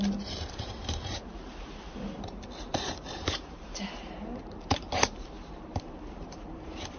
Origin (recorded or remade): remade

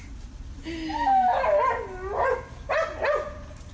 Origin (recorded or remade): recorded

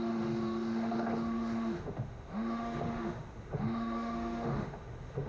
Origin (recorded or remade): remade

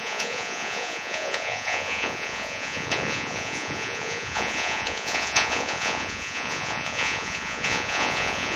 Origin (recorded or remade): remade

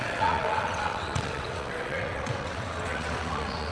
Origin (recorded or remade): remade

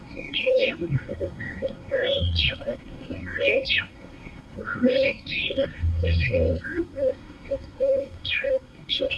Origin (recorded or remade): remade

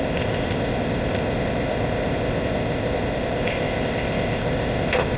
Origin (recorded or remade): remade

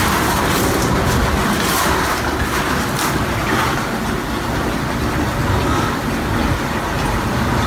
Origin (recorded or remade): recorded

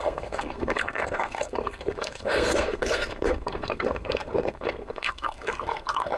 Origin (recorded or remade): remade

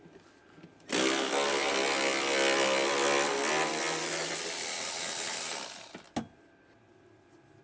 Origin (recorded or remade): recorded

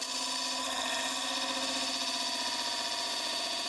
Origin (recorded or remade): recorded